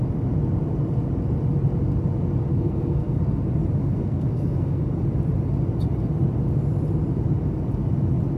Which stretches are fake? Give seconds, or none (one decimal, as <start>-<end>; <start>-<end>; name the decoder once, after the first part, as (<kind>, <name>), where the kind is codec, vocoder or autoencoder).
2.5-3.2 (codec, SNAC); 3.8-4.8